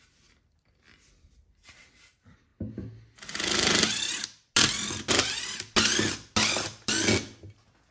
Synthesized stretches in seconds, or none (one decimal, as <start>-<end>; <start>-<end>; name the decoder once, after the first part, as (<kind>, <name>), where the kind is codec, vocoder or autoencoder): none